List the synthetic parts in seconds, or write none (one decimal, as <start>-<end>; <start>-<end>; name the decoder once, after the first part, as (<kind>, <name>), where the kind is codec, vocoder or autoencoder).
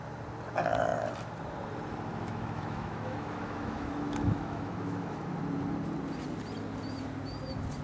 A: 2.1-5.3 (autoencoder, DAC-VAE)